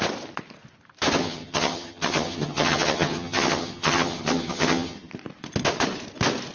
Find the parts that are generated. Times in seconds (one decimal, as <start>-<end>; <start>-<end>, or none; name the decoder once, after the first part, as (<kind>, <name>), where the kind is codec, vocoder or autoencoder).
1.2-5.1 (vocoder, HiFi-GAN)